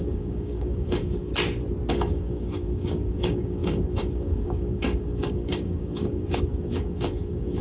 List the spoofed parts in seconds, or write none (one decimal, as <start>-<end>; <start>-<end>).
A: 0.0-1.3; 1.9-7.6